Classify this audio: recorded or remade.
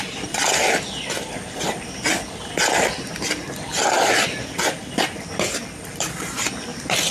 remade